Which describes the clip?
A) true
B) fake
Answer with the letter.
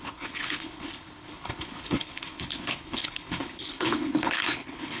B